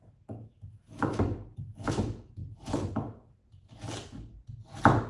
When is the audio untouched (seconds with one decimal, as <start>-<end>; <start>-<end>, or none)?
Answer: 2.4-2.9; 3.4-5.1